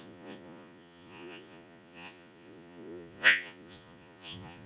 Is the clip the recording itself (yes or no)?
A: no